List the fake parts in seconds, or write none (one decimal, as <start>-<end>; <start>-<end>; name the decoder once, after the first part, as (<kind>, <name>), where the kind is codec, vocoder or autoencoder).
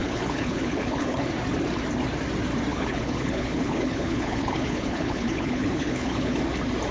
0.0-1.3 (codec, HILCodec); 2.7-6.4